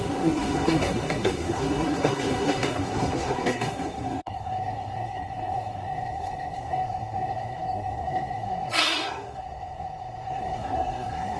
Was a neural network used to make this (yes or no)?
yes